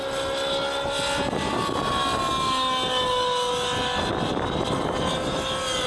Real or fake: real